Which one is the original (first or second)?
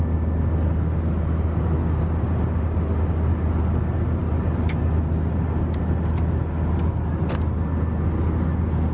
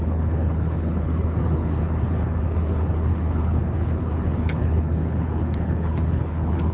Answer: first